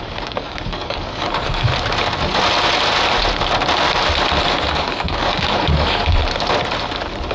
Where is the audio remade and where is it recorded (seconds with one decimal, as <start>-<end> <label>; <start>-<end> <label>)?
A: 0.0-1.7 remade; 1.7-4.4 recorded; 4.4-6.2 remade; 6.2-7.3 recorded